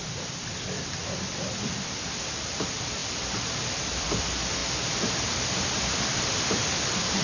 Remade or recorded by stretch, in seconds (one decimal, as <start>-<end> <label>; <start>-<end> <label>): 0.0-7.2 remade